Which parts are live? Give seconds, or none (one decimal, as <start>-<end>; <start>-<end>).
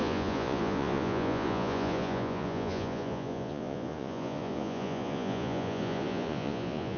none